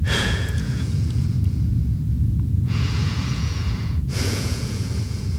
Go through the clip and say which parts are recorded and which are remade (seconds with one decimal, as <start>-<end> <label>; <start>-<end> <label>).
0.0-5.4 remade